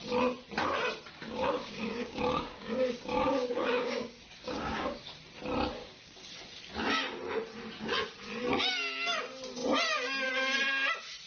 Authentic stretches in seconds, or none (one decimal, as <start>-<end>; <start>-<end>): 0.0-1.2; 5.1-5.8; 6.3-11.3